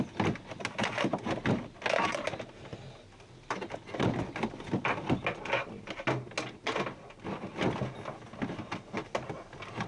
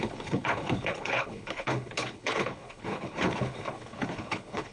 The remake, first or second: second